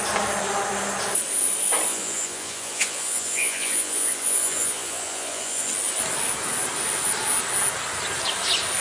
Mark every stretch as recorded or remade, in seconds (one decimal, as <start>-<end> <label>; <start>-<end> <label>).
0.0-1.9 recorded; 1.9-5.7 remade; 5.7-8.8 recorded